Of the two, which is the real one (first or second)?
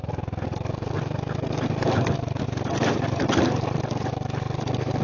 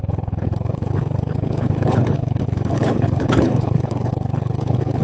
first